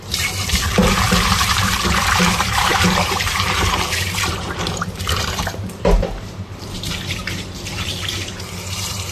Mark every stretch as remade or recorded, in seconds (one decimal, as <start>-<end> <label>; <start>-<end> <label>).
0.0-9.1 remade